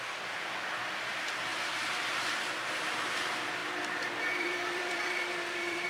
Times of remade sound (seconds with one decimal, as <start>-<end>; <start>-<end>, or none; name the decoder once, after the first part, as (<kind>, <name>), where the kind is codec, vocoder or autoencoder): 0.0-1.5 (vocoder, BigVGAN v2); 2.4-3.6; 4.3-5.9